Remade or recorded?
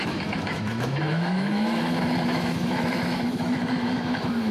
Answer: remade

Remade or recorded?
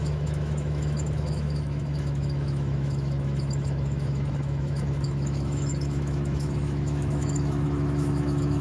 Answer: remade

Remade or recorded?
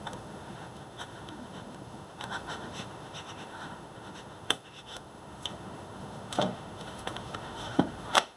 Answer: remade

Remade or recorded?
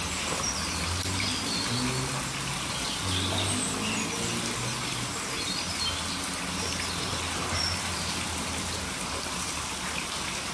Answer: recorded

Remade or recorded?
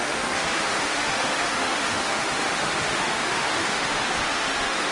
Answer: remade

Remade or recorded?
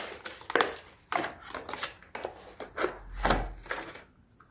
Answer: recorded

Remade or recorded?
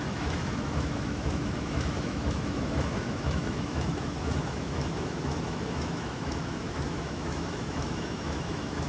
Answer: remade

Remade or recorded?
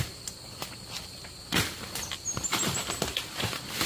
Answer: recorded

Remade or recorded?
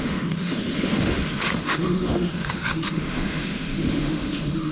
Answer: remade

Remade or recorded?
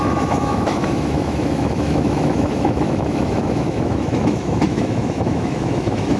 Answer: remade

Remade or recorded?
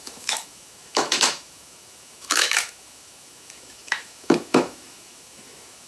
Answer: remade